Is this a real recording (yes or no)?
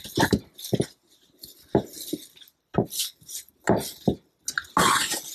yes